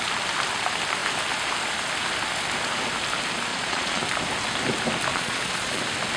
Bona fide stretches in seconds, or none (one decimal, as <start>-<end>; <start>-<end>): 0.0-3.5; 4.0-5.1; 5.8-6.2

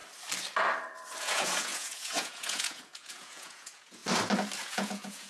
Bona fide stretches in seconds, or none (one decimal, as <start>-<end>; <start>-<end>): 0.0-1.2; 4.0-4.6

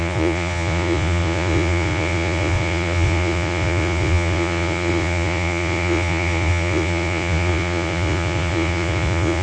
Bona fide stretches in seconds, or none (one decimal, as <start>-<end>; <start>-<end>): none

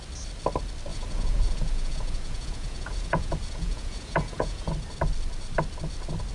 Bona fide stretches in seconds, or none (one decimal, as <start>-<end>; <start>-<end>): 0.0-0.9; 4.7-6.3

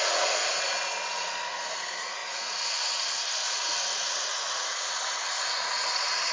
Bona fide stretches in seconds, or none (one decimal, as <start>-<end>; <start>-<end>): 0.4-1.2